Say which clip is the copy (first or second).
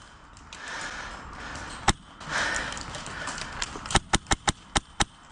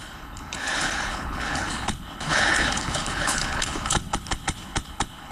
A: second